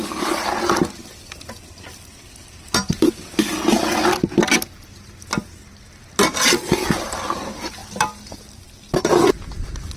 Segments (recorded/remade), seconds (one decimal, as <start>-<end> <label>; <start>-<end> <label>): 0.0-10.0 recorded

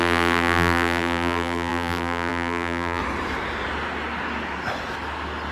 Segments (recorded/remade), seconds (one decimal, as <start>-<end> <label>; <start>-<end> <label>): 0.0-3.0 remade; 3.0-5.5 recorded

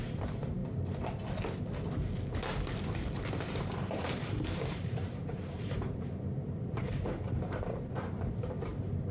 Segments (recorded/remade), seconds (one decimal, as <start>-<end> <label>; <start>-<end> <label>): 0.0-0.6 remade; 0.6-3.3 recorded; 3.3-9.1 remade

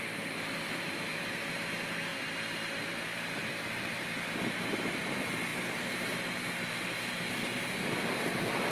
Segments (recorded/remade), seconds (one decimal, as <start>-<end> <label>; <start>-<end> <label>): 0.0-2.1 remade; 2.1-2.9 recorded; 2.9-3.4 remade; 3.4-4.0 recorded; 4.0-8.7 remade

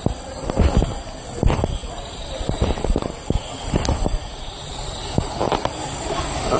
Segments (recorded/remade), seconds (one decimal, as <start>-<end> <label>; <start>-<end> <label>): 0.0-1.8 recorded; 1.8-3.1 remade; 3.1-3.9 recorded; 3.9-4.7 remade; 4.7-6.6 recorded

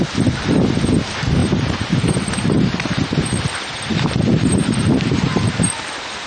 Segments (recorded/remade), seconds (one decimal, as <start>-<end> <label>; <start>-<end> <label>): 0.0-1.4 recorded; 1.4-2.6 remade; 2.6-4.3 recorded; 4.3-5.3 remade; 5.3-6.3 recorded

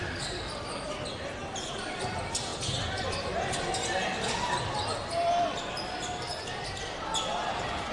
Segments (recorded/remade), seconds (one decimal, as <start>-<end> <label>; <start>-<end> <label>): 0.0-2.5 remade; 2.5-5.7 recorded; 5.7-7.9 remade